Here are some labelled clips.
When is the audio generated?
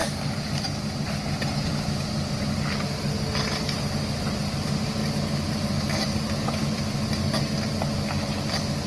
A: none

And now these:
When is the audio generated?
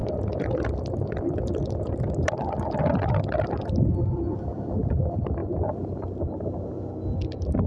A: none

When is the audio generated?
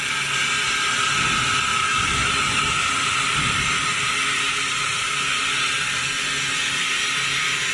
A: 1.7-2.3 (autoencoder, DAC-VAE)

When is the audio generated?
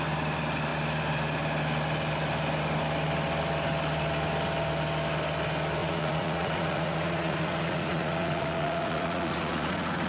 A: 5.8-10.1 (vocoder, Vocos)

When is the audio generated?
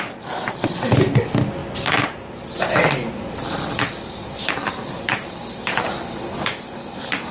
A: none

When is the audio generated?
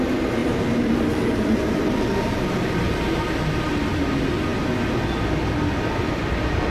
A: 0.4-3.2 (vocoder, BigVGAN v2)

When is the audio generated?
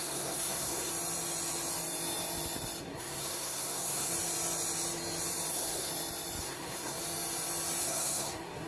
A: 0.0-0.9 (codec, SNAC); 2.8-4.1; 5.5-5.9; 6.4-7.0; 7.8-8.7